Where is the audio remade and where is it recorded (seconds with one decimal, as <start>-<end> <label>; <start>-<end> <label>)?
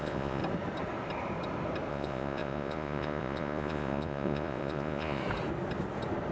0.0-0.4 remade; 0.4-1.9 recorded; 1.9-5.2 remade; 5.2-6.3 recorded